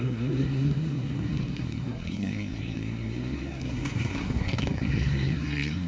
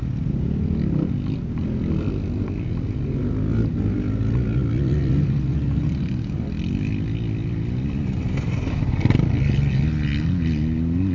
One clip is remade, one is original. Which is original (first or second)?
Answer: second